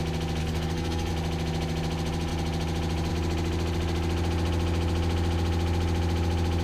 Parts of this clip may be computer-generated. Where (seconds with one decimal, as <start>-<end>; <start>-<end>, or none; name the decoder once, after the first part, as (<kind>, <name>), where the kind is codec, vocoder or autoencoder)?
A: 0.4-1.1 (codec, SNAC)